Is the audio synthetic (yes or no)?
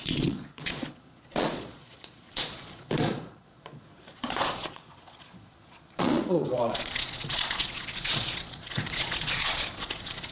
yes